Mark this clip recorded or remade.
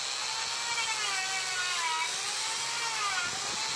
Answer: recorded